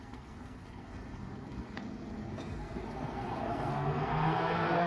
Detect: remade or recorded remade